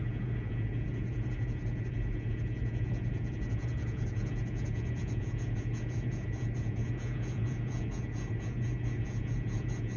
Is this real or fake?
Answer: fake